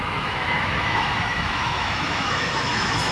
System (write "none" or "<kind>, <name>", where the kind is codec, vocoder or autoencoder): autoencoder, DAC-VAE